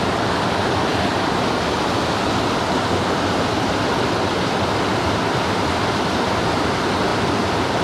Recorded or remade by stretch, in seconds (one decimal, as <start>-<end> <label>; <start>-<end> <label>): 0.0-0.9 recorded; 0.9-1.5 remade; 1.5-7.1 recorded; 7.1-7.8 remade